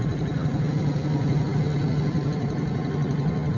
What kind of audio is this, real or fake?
real